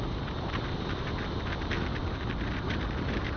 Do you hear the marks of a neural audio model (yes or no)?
no